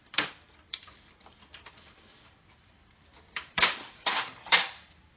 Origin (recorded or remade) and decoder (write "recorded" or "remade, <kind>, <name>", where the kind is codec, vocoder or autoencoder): remade, vocoder, BigVGAN v2